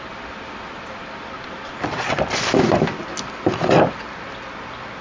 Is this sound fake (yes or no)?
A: no